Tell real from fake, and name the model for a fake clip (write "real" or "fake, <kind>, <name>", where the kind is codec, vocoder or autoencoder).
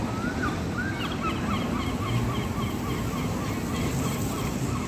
real